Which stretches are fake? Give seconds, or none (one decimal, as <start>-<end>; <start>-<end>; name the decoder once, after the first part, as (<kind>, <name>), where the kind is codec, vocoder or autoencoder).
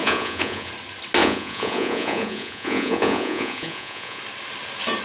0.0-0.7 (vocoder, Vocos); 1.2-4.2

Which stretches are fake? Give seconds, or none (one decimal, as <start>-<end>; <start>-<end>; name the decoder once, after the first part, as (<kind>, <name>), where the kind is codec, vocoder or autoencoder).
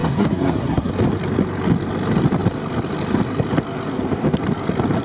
0.0-0.9 (codec, SNAC)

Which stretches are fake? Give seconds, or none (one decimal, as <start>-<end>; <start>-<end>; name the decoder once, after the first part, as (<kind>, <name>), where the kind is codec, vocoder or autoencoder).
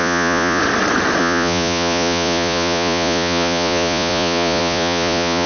0.0-0.6 (vocoder, Vocos); 1.2-5.5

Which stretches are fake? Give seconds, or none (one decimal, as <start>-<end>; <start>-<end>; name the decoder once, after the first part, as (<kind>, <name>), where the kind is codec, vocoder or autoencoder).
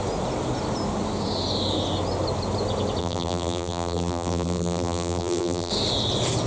3.0-5.7 (vocoder, BigVGAN v2)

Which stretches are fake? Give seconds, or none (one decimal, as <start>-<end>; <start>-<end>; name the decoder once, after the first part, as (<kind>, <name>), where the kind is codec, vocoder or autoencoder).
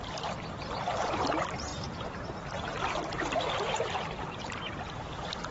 none